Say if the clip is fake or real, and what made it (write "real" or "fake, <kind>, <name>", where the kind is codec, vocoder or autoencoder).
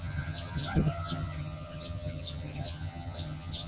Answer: fake, vocoder, HiFi-GAN